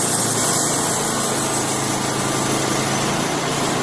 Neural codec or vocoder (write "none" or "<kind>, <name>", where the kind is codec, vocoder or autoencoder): none